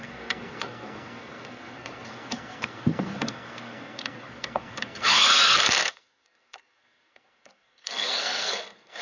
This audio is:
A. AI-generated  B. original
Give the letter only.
A